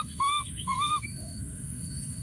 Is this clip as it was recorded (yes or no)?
no